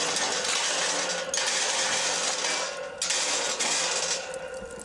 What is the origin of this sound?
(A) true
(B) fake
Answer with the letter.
A